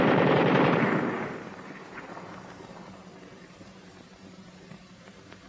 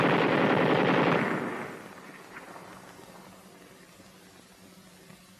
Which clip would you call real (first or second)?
second